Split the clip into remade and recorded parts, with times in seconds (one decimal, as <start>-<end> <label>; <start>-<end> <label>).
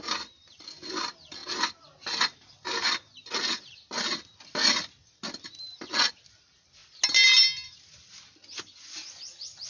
0.0-9.7 recorded